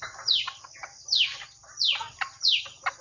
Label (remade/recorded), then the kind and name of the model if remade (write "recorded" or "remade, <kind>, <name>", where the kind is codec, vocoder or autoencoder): recorded